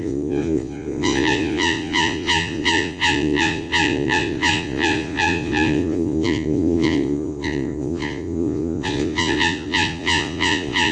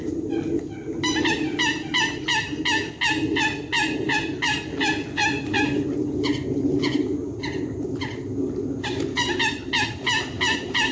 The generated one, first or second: first